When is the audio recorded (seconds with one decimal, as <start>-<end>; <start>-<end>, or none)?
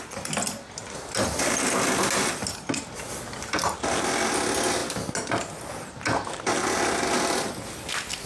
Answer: 0.0-8.3